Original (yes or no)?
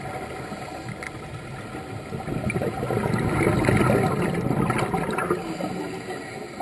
yes